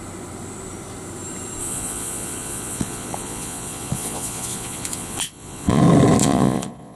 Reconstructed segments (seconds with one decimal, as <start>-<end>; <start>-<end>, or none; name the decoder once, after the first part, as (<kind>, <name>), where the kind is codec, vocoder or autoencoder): 1.6-5.8 (vocoder, Vocos); 6.2-7.0